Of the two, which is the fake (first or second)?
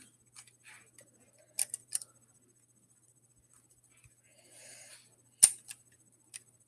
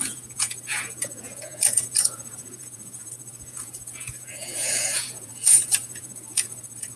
second